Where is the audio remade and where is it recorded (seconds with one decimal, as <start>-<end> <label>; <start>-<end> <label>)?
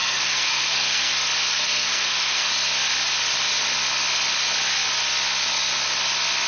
0.0-1.1 remade; 1.1-1.5 recorded; 1.5-2.5 remade; 2.5-6.5 recorded